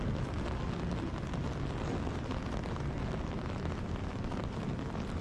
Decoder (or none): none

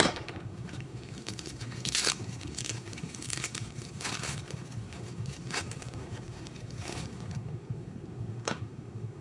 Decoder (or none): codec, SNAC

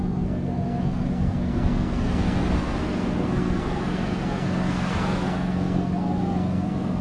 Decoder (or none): codec, SNAC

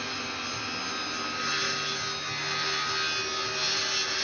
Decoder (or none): none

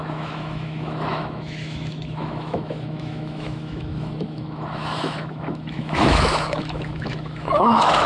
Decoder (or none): autoencoder, DAC-VAE